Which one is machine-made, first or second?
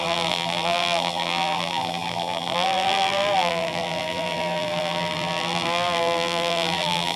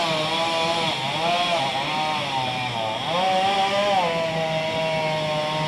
first